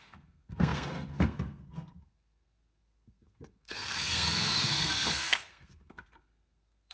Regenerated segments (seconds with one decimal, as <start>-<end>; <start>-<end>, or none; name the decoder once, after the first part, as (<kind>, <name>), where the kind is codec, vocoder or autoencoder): 0.0-6.9 (codec, SNAC)